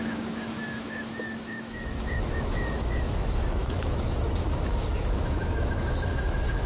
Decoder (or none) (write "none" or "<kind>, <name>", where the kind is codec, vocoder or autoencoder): autoencoder, DAC-VAE